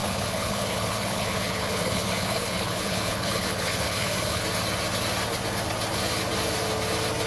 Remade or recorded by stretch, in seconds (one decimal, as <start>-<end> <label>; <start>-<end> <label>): 0.0-4.4 remade; 4.4-7.3 recorded